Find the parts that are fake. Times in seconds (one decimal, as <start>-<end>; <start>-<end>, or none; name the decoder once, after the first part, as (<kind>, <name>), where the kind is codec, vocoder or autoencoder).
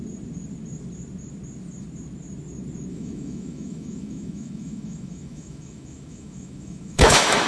2.9-7.5 (autoencoder, DAC-VAE)